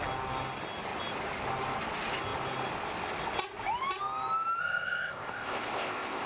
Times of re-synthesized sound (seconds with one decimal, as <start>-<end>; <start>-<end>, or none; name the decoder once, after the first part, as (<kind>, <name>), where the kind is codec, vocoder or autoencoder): 4.6-6.3 (codec, ZipCodec)